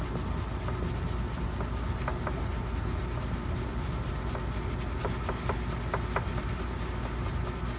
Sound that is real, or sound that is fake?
real